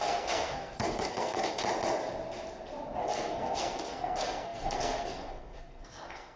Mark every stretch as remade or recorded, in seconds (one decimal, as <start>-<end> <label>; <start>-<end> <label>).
0.0-1.6 remade; 1.6-3.0 recorded; 3.0-6.4 remade